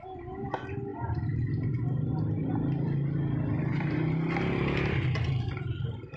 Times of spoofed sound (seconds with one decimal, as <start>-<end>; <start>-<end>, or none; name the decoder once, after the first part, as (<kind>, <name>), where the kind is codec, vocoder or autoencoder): none